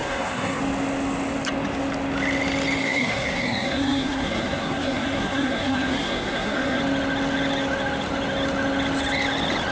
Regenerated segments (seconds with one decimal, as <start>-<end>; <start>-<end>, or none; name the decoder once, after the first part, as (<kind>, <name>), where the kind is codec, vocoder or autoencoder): 0.0-0.6 (codec, SNAC); 2.8-6.8